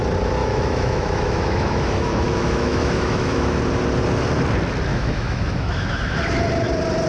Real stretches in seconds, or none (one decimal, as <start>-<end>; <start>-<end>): 0.0-0.4; 3.6-4.9; 6.2-7.1